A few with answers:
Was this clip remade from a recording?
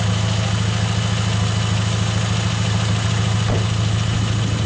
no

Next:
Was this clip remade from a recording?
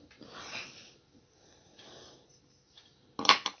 no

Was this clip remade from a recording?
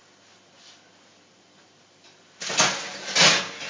no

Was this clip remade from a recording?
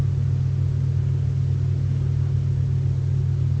no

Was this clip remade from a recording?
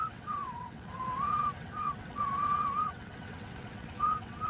yes